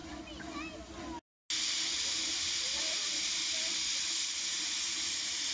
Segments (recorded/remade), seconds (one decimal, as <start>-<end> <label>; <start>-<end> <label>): 0.0-1.7 recorded; 1.7-5.5 remade